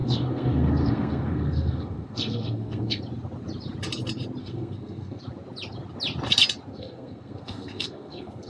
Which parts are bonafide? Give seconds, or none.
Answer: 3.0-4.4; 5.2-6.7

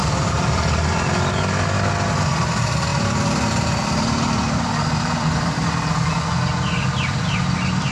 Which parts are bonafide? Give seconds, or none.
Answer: 1.3-2.9; 5.9-7.9

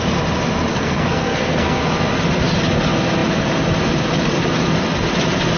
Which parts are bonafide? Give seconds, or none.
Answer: 0.0-0.7; 1.8-5.6

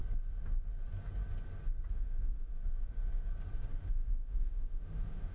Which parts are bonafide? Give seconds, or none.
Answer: 0.0-1.9; 2.5-3.8

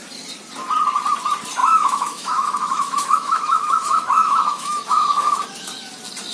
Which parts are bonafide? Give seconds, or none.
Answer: 0.0-1.6; 5.4-6.3

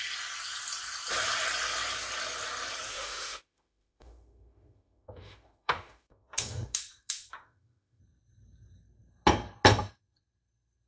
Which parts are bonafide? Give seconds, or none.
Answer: 0.0-2.9; 8.0-10.9

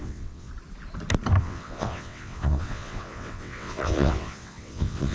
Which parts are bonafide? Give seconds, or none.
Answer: 0.5-1.4